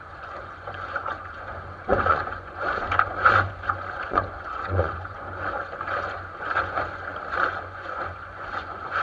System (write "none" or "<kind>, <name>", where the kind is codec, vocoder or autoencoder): vocoder, Vocos